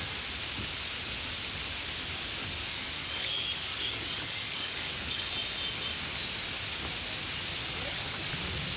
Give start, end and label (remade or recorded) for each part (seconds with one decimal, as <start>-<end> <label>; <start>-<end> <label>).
0.0-2.4 recorded; 2.4-5.3 remade; 5.3-7.6 recorded; 7.6-8.3 remade; 8.3-8.8 recorded